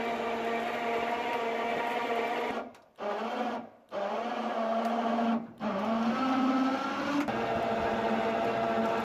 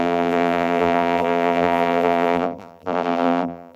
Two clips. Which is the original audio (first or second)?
first